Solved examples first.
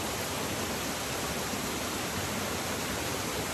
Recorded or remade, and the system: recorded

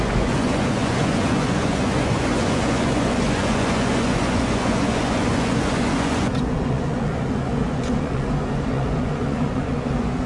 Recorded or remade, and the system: remade, vocoder, Vocos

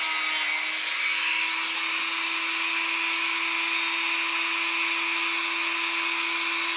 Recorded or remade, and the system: recorded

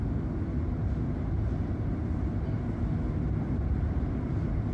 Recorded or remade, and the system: recorded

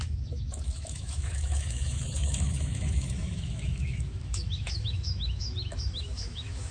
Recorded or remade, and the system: remade, autoencoder, DAC-VAE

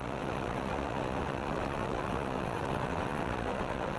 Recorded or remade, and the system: remade, vocoder, WaveNeXt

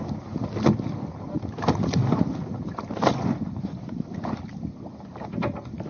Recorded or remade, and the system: recorded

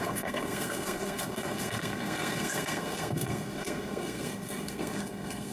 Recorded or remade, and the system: remade, codec, SNAC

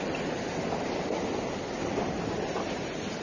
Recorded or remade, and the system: recorded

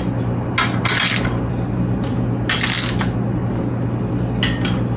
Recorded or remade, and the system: recorded